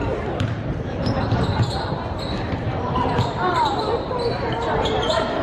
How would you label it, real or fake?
fake